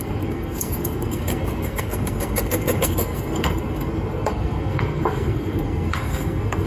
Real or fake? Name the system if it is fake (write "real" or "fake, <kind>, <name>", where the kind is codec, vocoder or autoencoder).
fake, codec, SNAC